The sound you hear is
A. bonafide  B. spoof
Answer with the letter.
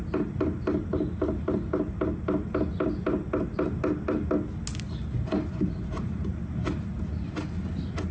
A